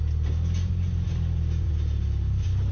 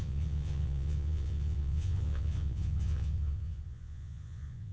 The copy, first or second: second